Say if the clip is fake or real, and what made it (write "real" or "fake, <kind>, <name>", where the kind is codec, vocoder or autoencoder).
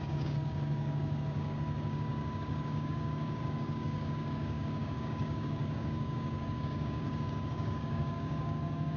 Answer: fake, codec, DAC